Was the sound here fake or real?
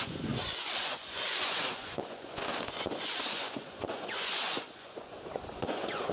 fake